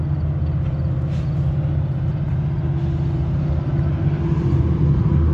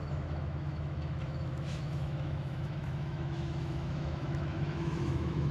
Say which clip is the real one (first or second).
first